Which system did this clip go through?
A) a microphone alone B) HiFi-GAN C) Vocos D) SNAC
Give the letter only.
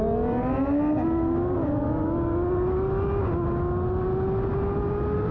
A